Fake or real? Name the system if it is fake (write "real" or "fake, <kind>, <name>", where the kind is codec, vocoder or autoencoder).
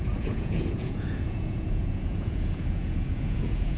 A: fake, vocoder, Vocos